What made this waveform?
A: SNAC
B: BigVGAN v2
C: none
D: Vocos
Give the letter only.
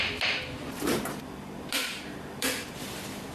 B